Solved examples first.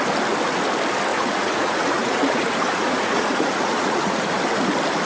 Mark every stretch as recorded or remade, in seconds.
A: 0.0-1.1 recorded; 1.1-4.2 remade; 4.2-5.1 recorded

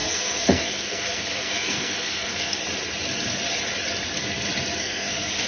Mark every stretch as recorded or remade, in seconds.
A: 0.0-2.6 remade; 2.6-4.8 recorded; 4.8-5.5 remade

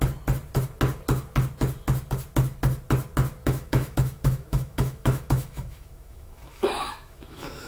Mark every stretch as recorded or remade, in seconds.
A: 0.0-3.4 recorded; 3.4-7.7 remade